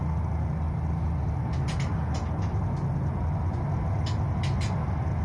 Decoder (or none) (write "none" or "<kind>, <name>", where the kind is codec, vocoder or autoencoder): none